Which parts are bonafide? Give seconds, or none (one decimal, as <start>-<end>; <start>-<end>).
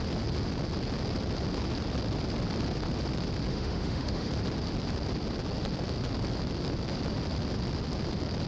0.0-3.5; 4.3-8.5